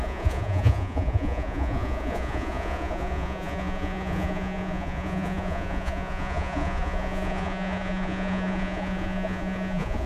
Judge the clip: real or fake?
fake